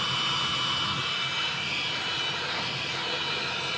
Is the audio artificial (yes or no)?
no